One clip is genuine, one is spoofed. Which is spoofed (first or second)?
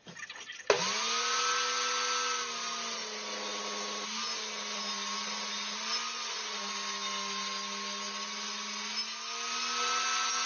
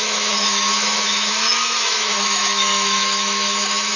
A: second